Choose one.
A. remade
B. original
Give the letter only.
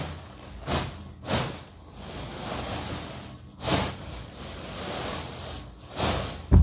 B